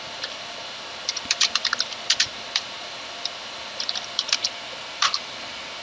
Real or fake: fake